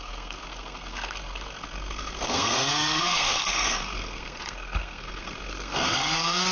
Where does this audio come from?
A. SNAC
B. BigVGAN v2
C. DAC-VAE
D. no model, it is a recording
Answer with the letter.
A